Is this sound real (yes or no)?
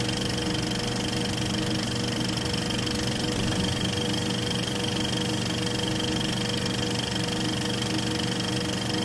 yes